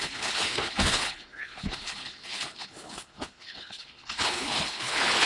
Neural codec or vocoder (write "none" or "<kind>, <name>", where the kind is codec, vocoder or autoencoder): codec, HILCodec